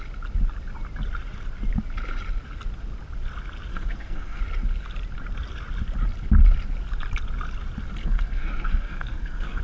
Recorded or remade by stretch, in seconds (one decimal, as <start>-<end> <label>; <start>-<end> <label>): 0.0-3.7 recorded; 3.7-4.4 remade; 4.4-8.0 recorded; 8.0-9.6 remade